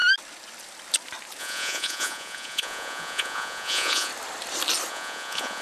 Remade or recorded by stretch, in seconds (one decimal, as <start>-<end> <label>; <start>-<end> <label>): 0.0-1.4 recorded; 1.4-4.1 remade; 4.1-4.9 recorded; 4.9-5.6 remade